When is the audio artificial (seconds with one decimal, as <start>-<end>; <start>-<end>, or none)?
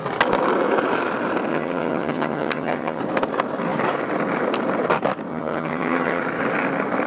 1.5-3.0; 5.3-6.2